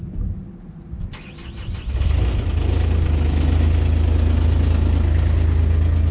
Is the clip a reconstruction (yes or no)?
no